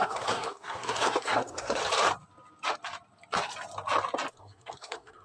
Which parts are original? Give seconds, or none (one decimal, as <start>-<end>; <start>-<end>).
1.8-4.3